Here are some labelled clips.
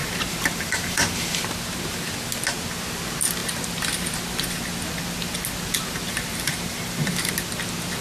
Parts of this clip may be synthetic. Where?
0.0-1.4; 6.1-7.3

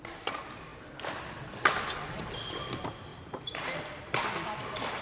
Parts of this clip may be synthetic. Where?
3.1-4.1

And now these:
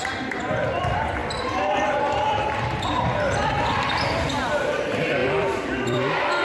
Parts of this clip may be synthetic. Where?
1.2-2.9; 5.2-6.4

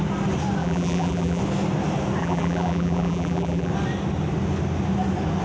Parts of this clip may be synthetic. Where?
0.6-1.4; 2.2-3.7

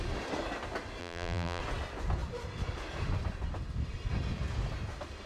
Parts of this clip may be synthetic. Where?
1.0-1.6

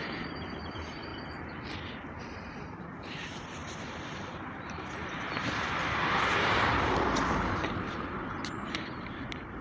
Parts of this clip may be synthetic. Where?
0.0-1.1; 2.2-9.6

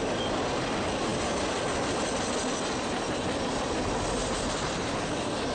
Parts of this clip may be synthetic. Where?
none

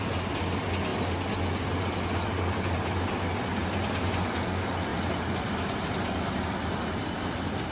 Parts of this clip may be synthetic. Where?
4.9-5.9